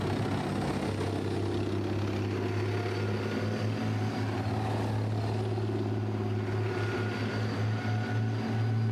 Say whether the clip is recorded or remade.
recorded